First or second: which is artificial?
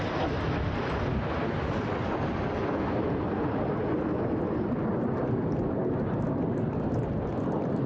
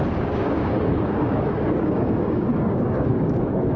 second